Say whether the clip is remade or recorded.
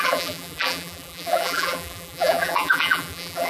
remade